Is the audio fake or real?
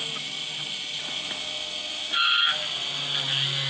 real